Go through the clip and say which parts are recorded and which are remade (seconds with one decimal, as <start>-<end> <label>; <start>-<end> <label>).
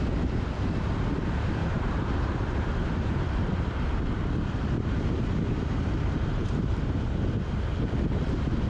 0.0-1.6 recorded; 1.6-6.8 remade; 6.8-8.7 recorded